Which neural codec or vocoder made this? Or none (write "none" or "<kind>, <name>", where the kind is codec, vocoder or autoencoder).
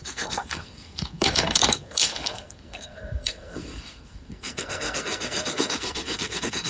codec, SNAC